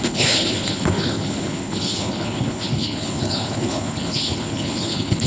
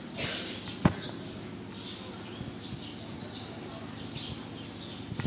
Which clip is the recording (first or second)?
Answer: second